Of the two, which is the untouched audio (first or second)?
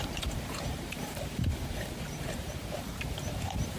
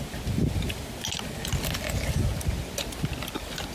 second